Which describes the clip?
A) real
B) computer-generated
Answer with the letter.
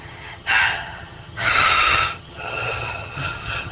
B